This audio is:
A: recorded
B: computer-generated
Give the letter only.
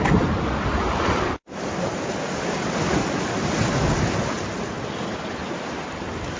B